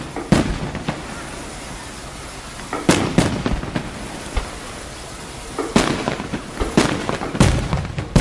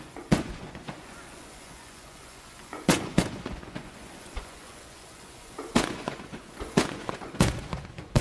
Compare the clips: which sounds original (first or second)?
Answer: first